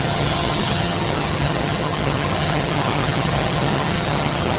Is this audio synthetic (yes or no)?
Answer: yes